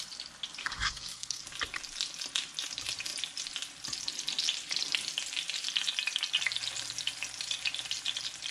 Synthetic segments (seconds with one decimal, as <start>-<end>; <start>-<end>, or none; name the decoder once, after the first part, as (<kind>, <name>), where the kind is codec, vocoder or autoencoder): 0.6-1.4 (codec, SNAC)